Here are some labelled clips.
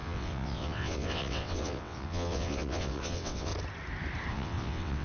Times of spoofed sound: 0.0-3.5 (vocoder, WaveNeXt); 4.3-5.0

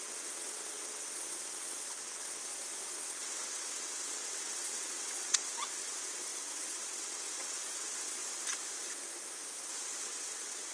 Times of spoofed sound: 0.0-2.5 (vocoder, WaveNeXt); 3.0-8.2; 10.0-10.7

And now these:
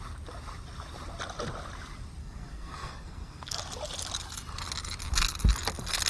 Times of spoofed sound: 2.2-3.6 (codec, SNAC)